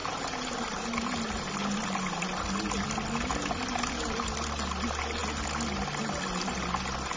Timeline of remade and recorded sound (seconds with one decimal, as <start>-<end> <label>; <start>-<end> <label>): 0.0-7.2 recorded